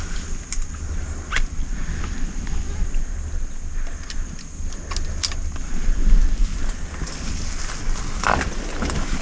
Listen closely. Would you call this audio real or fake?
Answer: real